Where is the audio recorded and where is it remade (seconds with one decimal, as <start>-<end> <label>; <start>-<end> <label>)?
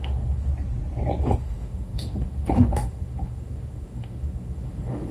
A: 0.0-0.5 remade; 0.5-1.2 recorded; 1.2-5.1 remade